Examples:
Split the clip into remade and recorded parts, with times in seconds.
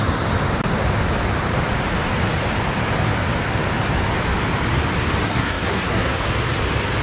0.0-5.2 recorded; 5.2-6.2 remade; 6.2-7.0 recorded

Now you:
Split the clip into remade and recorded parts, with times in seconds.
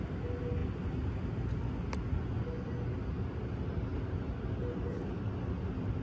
0.0-6.0 recorded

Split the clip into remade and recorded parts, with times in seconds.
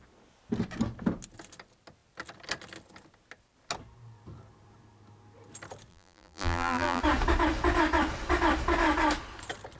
0.0-5.9 recorded; 5.9-7.0 remade; 7.0-9.8 recorded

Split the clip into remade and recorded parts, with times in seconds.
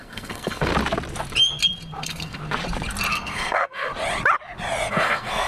0.0-0.7 remade; 0.7-2.0 recorded; 2.0-2.4 remade; 2.4-3.1 recorded; 3.1-3.9 remade; 3.9-4.9 recorded; 4.9-5.5 remade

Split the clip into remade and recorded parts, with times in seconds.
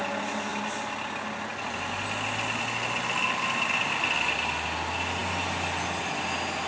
0.0-6.7 recorded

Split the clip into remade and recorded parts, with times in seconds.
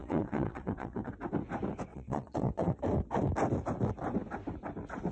0.0-1.1 remade; 1.1-1.9 recorded; 1.9-2.8 remade; 2.8-5.1 recorded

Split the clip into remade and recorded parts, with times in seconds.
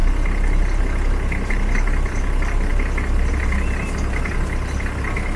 0.0-5.4 recorded